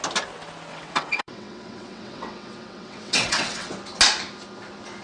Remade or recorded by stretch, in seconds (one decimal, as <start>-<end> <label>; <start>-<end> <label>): 0.0-0.7 recorded; 0.7-3.7 remade; 3.7-5.0 recorded